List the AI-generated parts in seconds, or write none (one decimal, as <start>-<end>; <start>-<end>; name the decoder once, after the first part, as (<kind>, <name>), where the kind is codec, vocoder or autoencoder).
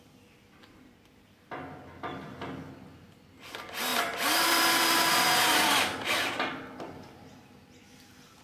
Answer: 3.9-6.3 (vocoder, BigVGAN v2)